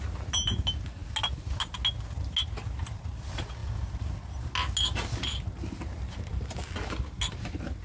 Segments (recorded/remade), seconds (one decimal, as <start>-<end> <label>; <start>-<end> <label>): 0.0-7.8 recorded